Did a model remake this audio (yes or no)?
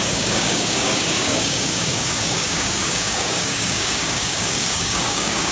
yes